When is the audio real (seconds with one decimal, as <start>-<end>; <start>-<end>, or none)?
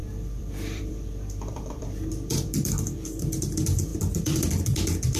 none